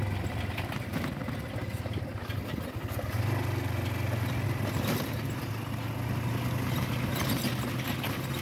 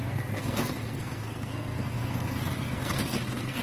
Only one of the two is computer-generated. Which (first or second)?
second